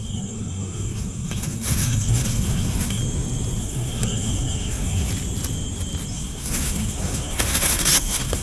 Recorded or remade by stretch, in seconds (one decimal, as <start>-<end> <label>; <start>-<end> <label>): 0.0-3.0 remade; 3.0-3.6 recorded; 3.6-5.1 remade; 5.1-6.1 recorded; 6.1-8.4 remade